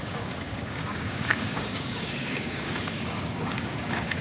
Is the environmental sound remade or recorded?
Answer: remade